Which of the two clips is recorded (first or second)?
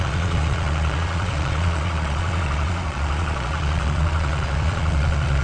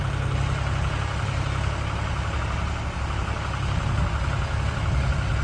second